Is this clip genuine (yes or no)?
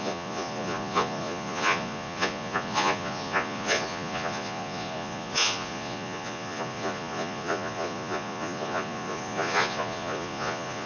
no